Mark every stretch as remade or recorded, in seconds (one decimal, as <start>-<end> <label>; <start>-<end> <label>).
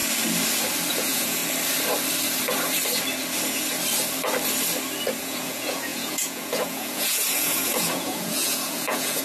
0.0-0.9 recorded; 0.9-1.4 remade; 1.4-5.2 recorded; 5.2-9.2 remade